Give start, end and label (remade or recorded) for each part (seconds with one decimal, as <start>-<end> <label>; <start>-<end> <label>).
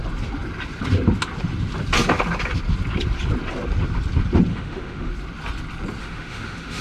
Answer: 0.0-4.5 recorded; 4.5-5.1 remade; 5.1-6.0 recorded; 6.0-6.8 remade